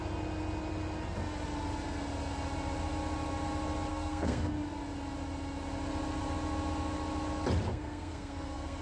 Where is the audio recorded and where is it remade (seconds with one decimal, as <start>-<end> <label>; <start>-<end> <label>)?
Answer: 0.0-3.9 recorded; 3.9-4.5 remade; 4.5-7.7 recorded; 7.7-8.8 remade